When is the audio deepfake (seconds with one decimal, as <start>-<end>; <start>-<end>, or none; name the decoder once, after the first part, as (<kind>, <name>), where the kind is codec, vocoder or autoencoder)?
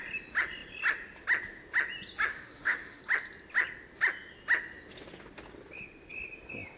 2.3-3.0 (autoencoder, DAC-VAE)